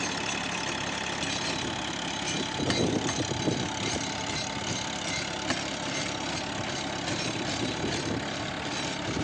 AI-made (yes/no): no